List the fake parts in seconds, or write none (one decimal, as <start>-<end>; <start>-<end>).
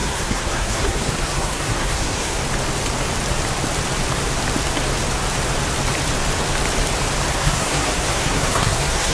0.0-2.4; 7.3-9.1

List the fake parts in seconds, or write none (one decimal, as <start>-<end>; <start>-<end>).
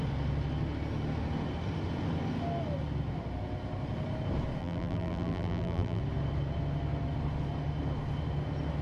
4.6-6.0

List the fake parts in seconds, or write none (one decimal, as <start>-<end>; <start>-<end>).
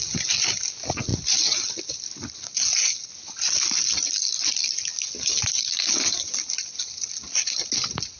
none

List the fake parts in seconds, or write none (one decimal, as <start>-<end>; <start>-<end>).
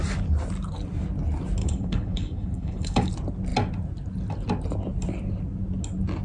1.6-3.1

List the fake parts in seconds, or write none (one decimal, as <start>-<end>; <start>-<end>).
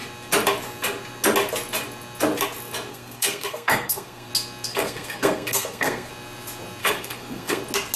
2.9-4.3; 4.7-6.1; 6.8-7.6